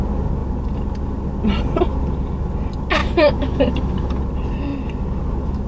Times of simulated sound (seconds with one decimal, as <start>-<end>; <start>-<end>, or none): 3.0-4.2